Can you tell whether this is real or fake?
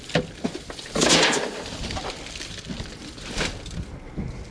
fake